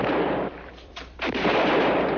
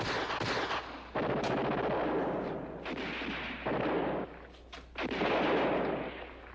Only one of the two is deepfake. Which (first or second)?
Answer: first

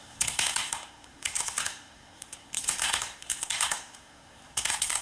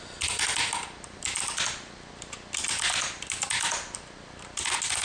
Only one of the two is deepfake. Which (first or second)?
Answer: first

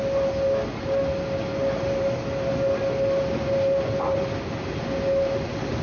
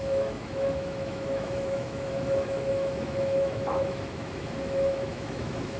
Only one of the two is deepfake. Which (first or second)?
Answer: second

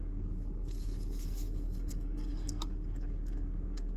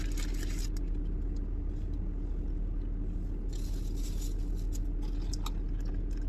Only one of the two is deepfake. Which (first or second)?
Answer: first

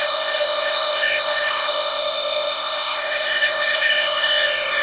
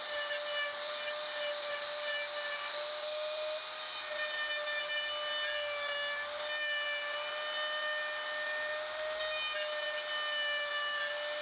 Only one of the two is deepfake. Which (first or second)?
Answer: first